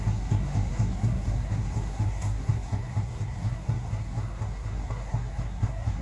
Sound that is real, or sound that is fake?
fake